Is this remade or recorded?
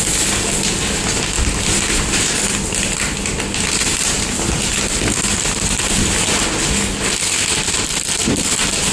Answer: recorded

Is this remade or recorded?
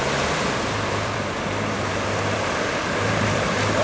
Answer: remade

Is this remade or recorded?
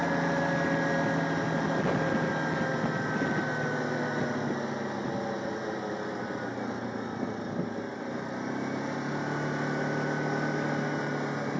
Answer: recorded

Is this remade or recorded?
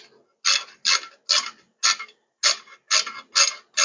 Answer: recorded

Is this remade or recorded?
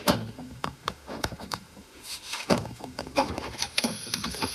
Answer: remade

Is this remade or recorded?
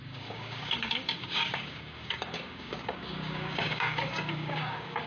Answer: remade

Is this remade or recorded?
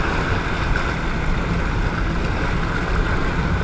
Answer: recorded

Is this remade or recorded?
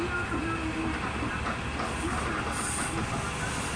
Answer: recorded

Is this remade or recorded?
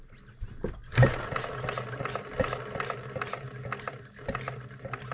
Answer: recorded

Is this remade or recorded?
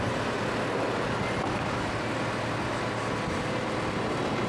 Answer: recorded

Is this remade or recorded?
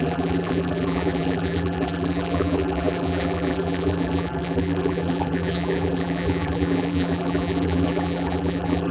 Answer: remade